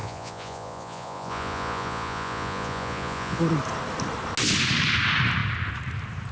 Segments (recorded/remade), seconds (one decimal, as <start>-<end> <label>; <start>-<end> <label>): 0.0-3.4 remade; 3.4-6.3 recorded